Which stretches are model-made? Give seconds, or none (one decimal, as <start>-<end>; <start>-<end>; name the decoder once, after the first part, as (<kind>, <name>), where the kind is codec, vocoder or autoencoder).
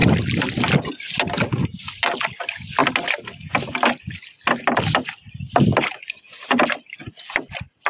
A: none